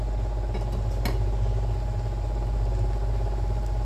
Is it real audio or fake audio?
real